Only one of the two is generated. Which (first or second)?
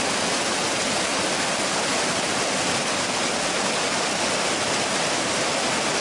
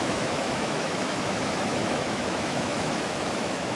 second